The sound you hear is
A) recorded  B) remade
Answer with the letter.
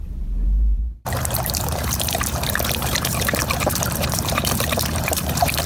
B